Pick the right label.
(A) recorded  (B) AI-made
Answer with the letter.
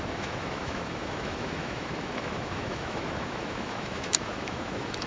B